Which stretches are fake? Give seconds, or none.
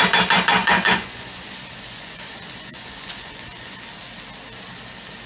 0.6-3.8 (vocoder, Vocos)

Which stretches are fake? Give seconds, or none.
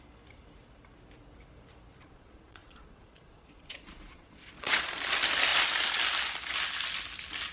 1.9-5.0 (vocoder, Vocos)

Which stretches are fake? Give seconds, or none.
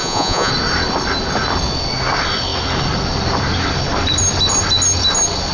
0.0-0.5 (vocoder, Vocos)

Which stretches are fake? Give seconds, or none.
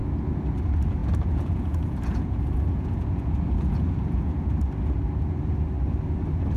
1.0-4.5 (vocoder, Vocos)